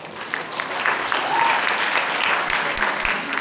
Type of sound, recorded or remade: recorded